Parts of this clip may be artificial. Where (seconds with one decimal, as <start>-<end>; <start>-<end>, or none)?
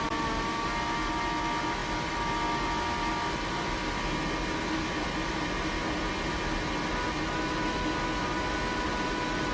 none